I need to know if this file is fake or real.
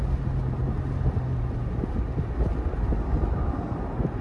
real